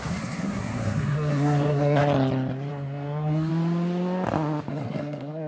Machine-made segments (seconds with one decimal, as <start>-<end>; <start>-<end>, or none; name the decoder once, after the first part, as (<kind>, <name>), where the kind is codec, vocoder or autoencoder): 0.0-2.0 (codec, SNAC); 2.7-3.5; 4.7-5.5